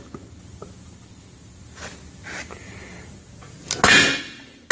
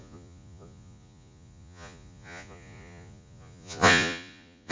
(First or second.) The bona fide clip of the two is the first